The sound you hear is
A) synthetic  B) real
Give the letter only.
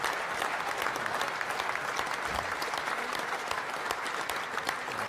B